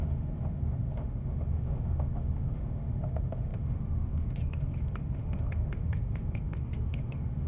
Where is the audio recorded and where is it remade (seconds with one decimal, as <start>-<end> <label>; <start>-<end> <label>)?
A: 0.0-7.5 remade